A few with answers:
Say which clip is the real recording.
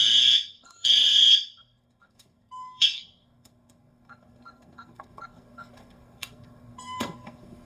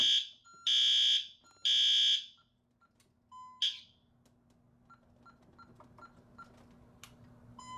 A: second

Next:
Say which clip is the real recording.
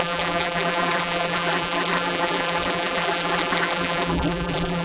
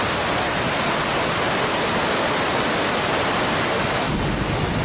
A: second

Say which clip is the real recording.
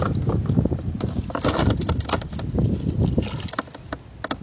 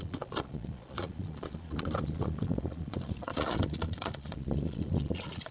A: first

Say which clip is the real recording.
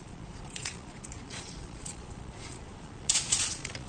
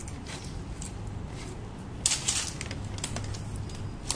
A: second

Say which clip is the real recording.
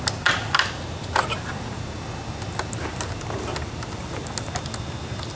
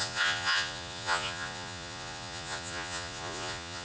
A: first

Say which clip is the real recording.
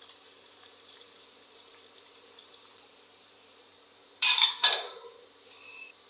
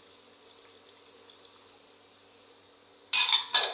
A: second